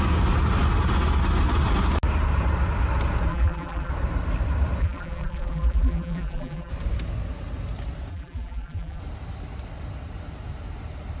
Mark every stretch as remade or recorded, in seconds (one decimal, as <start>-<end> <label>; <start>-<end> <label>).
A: 0.0-3.3 recorded; 3.3-3.9 remade; 3.9-4.8 recorded; 4.8-6.7 remade; 6.7-8.1 recorded; 8.1-9.0 remade; 9.0-11.2 recorded